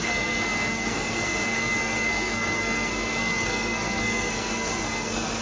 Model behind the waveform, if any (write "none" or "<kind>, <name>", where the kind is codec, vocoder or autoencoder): codec, SNAC